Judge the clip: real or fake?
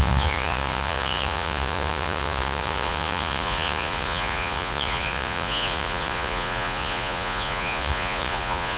fake